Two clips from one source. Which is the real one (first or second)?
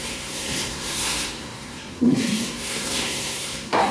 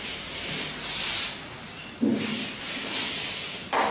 second